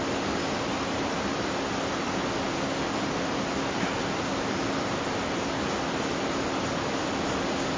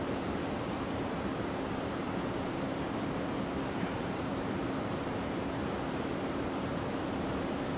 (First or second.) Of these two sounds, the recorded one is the first